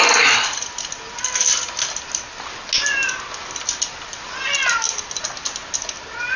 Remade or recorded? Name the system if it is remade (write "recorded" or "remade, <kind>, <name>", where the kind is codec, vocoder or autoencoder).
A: recorded